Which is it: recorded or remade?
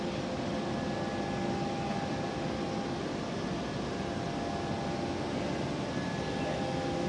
recorded